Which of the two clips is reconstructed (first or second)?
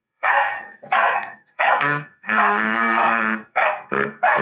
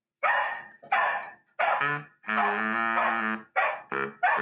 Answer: first